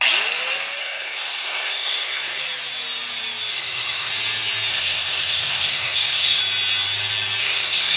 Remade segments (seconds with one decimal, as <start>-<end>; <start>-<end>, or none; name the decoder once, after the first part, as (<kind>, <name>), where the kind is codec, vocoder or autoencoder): 0.8-2.4 (codec, SNAC); 3.5-4.1; 4.7-6.4; 7.4-8.0